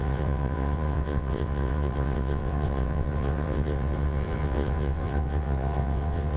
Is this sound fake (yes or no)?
yes